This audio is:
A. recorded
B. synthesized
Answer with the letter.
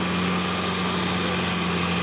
A